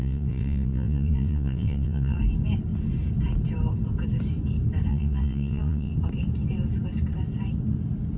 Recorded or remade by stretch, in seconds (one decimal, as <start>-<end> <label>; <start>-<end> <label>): 0.0-2.2 remade; 2.2-4.9 recorded; 4.9-5.9 remade; 5.9-8.2 recorded